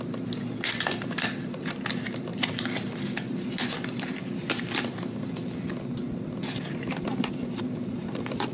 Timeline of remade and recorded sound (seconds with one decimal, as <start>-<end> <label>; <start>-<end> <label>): 0.0-2.3 recorded; 2.3-5.0 remade; 5.0-7.1 recorded; 7.1-8.0 remade; 8.0-8.5 recorded